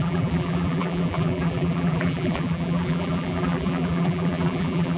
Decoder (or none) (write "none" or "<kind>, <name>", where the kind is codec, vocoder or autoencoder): vocoder, BigVGAN v2